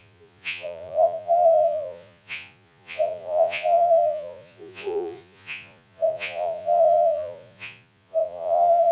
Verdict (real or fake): fake